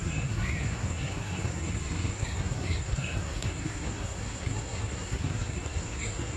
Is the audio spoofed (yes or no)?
yes